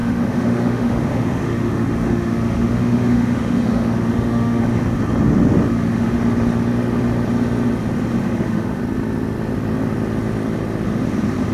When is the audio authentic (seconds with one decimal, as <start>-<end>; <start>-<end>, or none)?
4.6-5.7; 6.2-8.2; 8.8-11.5